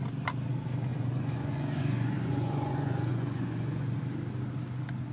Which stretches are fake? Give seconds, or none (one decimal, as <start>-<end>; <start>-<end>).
0.9-4.0